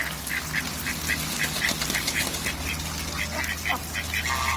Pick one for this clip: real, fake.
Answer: real